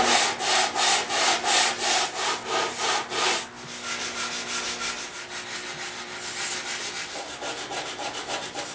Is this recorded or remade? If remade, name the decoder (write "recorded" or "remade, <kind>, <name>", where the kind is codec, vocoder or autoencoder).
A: recorded